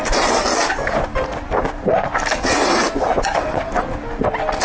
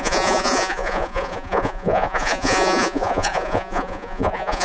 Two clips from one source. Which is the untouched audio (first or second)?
first